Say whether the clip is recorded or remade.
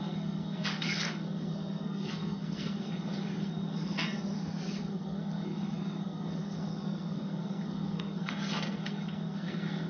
remade